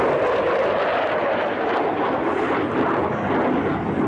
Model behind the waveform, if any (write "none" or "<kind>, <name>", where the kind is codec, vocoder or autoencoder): none